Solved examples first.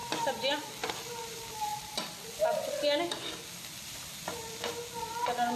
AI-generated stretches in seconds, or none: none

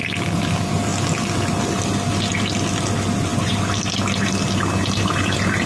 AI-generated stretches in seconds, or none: none